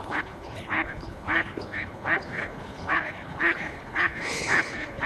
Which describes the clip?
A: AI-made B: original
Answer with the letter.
A